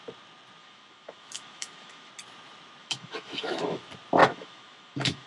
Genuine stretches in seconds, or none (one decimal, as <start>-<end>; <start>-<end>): 0.0-0.6; 2.1-2.8; 3.8-4.2